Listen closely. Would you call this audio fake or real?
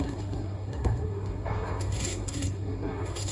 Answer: fake